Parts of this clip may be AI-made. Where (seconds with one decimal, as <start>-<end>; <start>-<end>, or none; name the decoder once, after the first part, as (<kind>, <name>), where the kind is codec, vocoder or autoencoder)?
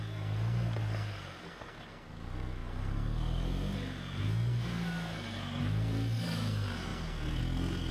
0.0-7.9 (codec, SNAC)